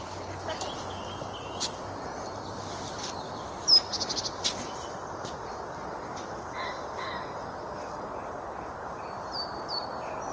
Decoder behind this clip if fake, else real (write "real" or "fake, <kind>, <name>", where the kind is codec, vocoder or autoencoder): real